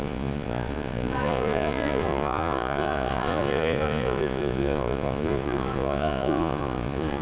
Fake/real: fake